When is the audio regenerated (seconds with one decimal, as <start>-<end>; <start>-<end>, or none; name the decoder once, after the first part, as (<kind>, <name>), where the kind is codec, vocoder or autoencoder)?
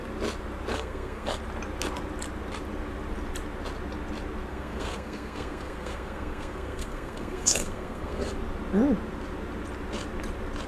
0.7-1.4 (codec, SNAC); 4.5-8.3